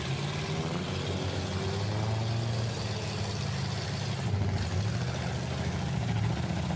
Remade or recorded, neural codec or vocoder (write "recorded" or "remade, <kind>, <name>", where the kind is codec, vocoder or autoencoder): recorded